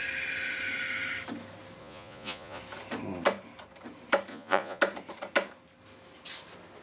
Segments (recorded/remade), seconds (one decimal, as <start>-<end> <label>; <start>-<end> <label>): 0.0-1.8 recorded; 1.8-2.6 remade; 2.6-4.3 recorded; 4.3-4.8 remade; 4.8-6.8 recorded